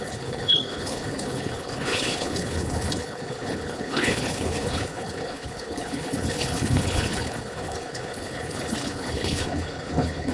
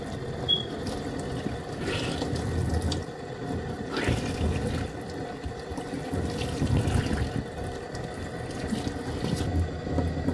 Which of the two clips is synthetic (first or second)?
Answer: first